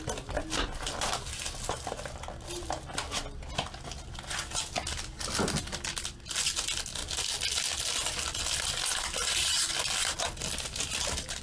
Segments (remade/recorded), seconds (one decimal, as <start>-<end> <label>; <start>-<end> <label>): 0.0-11.4 recorded